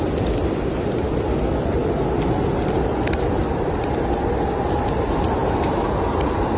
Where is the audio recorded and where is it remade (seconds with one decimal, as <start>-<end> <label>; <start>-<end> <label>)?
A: 0.0-6.6 recorded